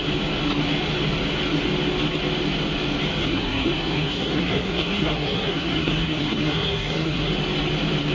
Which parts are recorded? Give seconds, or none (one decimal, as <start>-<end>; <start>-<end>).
0.0-3.2; 7.3-8.1